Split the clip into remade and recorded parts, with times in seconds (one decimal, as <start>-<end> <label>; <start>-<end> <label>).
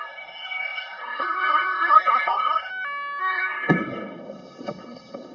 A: 0.0-2.7 remade; 2.7-3.2 recorded; 3.2-5.3 remade